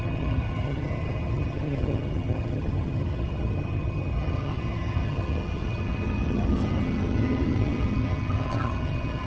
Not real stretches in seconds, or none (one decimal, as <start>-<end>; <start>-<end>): 0.0-9.3